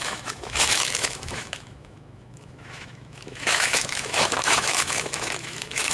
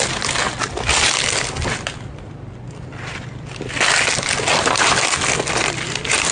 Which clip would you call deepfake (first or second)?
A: first